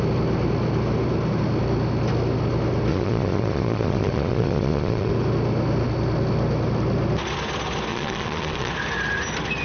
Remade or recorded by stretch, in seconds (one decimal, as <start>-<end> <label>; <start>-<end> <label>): 0.0-2.9 recorded; 2.9-5.1 remade; 5.1-7.9 recorded; 7.9-8.7 remade; 8.7-9.6 recorded